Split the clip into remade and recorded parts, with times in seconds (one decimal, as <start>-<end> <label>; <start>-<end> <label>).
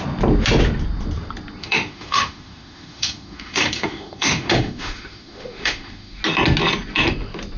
0.0-1.6 recorded; 1.6-6.2 remade; 6.2-7.6 recorded